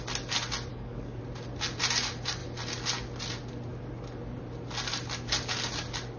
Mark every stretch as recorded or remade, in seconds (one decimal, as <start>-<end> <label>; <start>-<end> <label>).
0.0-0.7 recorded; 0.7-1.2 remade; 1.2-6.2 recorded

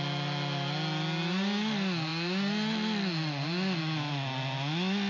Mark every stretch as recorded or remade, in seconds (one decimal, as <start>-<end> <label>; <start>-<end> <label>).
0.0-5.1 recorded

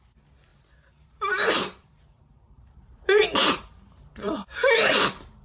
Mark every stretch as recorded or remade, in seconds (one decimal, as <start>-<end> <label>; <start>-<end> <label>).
0.0-0.5 recorded; 0.5-3.0 remade; 3.0-3.4 recorded; 3.4-4.9 remade; 4.9-5.4 recorded

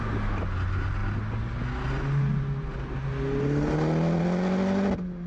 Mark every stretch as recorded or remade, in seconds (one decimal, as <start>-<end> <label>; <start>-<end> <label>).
0.0-5.3 recorded

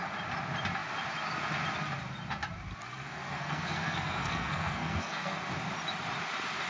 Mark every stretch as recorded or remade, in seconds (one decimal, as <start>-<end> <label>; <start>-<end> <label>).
0.0-2.9 recorded; 2.9-5.4 remade; 5.4-6.7 recorded

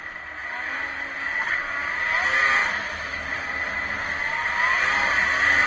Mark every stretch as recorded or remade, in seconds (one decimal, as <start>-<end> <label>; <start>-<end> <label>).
0.0-0.4 recorded; 0.4-1.0 remade; 1.0-2.6 recorded; 2.6-3.3 remade; 3.3-5.7 recorded